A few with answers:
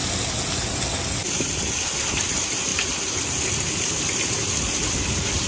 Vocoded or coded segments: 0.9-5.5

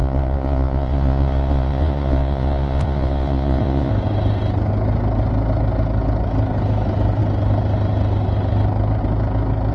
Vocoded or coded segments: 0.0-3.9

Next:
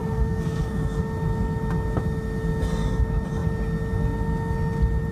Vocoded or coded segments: 0.0-1.0

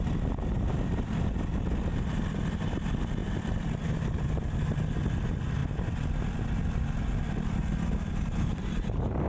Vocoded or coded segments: none

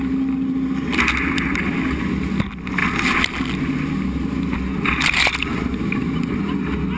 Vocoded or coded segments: none

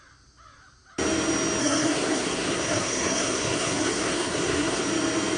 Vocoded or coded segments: 1.6-4.8